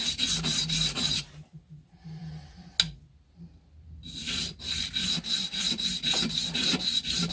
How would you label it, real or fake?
real